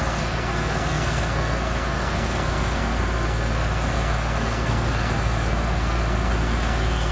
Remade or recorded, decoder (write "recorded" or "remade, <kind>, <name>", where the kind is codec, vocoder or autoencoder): remade, codec, SNAC